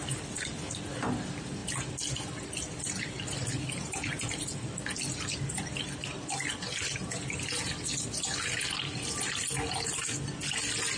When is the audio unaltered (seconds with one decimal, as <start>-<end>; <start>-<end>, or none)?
0.0-11.0